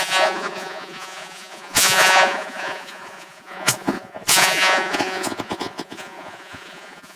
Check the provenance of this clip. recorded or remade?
remade